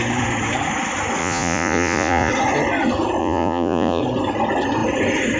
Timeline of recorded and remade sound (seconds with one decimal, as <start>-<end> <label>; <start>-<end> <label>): 0.0-1.2 recorded; 1.2-2.3 remade; 2.3-3.2 recorded; 3.2-4.0 remade; 4.0-5.4 recorded